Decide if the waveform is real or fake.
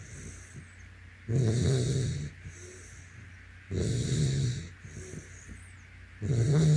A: real